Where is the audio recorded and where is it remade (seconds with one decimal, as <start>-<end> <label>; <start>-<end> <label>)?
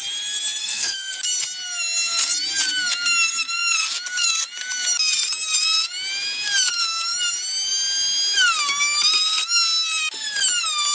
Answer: 0.0-0.6 recorded; 0.6-1.2 remade; 1.2-10.9 recorded